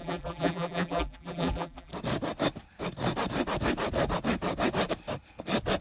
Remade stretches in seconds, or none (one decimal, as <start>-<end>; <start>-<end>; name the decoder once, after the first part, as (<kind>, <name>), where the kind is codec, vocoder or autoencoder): 0.0-1.9 (vocoder, BigVGAN v2)